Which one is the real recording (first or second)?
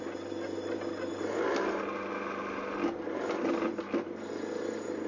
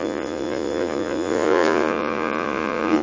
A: first